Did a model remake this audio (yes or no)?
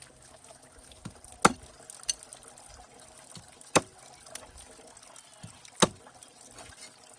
no